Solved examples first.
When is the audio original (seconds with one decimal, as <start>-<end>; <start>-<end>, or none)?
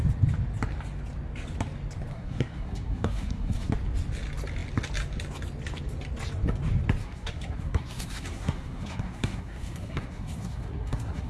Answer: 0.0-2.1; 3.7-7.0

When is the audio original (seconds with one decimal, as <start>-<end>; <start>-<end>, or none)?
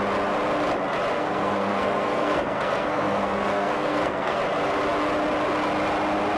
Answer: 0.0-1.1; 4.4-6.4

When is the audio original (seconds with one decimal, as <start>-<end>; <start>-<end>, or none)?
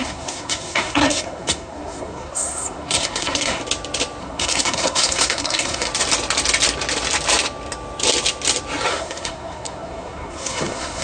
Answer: 3.6-4.2; 5.9-8.9